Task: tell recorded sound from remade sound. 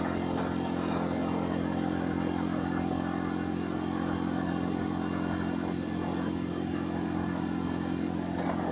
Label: recorded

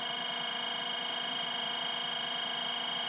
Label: recorded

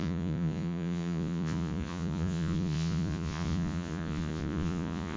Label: remade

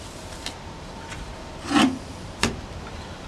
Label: remade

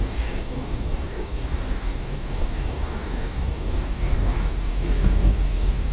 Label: remade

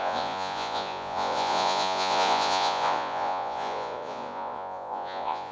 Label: remade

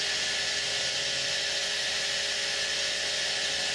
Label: recorded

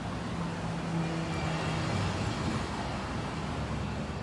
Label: recorded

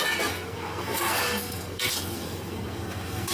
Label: remade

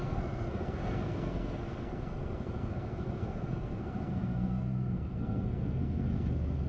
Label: remade